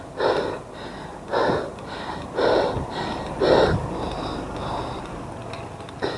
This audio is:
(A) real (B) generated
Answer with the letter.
A